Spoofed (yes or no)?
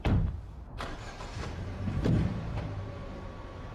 yes